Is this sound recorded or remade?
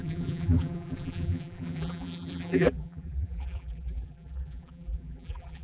remade